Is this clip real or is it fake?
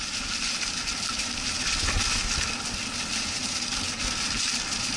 real